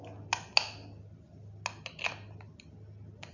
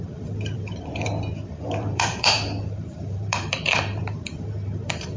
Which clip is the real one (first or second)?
first